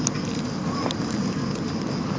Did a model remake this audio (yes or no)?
no